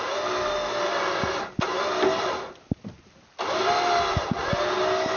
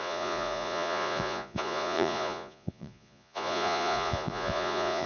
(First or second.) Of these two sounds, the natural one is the first